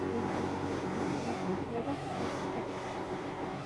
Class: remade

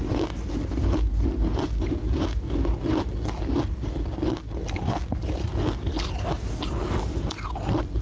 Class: recorded